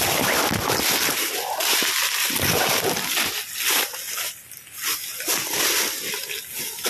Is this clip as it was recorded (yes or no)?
yes